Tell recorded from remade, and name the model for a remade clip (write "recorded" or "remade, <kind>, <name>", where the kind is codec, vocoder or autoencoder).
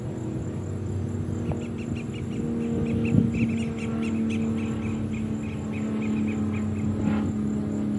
recorded